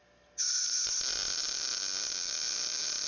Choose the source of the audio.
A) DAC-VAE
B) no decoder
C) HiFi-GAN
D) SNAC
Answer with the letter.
B